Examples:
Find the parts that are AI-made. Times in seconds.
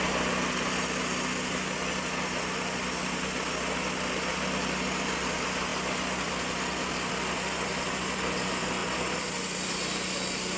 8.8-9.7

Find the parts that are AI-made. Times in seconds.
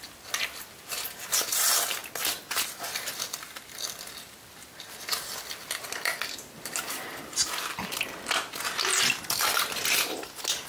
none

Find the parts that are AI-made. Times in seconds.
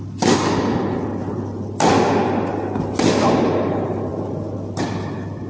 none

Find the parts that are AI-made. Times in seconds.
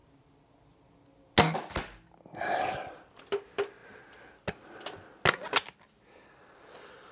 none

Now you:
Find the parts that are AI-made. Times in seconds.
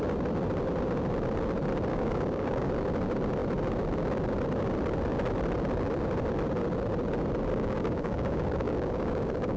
1.9-2.7; 7.5-9.6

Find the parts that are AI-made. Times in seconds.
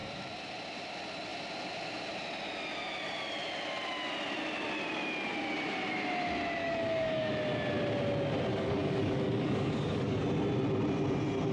6.6-7.3; 8.5-10.2